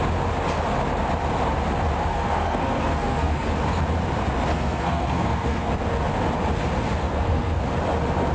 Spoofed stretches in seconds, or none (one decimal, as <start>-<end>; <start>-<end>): 2.1-3.5; 4.5-5.7; 7.0-7.6